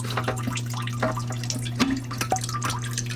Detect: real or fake real